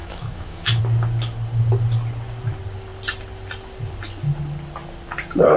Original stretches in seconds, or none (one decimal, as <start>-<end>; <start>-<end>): 0.8-5.6